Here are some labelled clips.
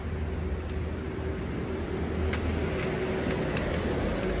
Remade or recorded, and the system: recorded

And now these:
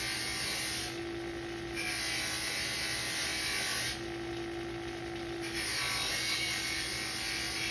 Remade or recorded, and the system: recorded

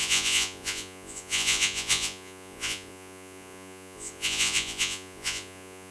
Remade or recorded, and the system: remade, vocoder, Vocos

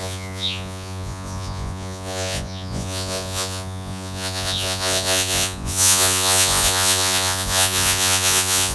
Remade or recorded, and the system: remade, vocoder, Vocos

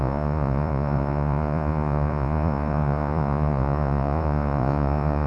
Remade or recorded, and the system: remade, vocoder, Vocos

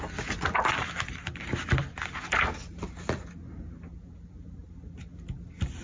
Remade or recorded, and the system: recorded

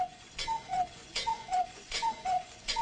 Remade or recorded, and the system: remade, vocoder, Vocos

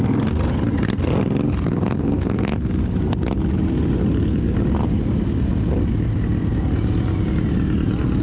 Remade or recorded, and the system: recorded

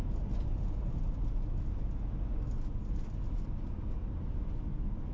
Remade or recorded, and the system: recorded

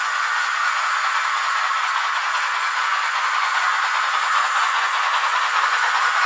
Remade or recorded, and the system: remade, vocoder, Vocos